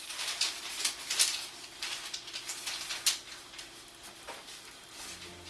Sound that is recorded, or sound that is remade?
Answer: recorded